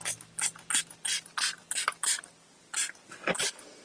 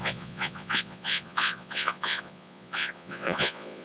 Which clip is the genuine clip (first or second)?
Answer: first